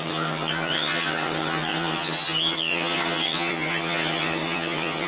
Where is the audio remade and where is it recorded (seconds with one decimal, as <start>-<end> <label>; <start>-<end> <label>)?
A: 0.0-5.1 remade